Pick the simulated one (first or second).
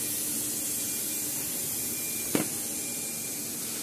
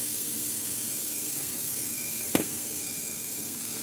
second